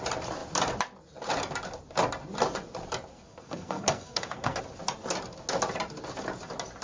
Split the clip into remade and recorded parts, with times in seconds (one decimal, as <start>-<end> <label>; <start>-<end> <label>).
0.0-3.1 recorded; 3.1-4.6 remade; 4.6-6.8 recorded